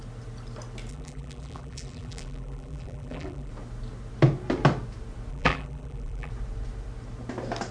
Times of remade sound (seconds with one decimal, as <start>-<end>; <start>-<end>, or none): 0.9-3.5; 5.3-6.3